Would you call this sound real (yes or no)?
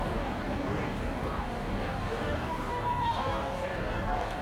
no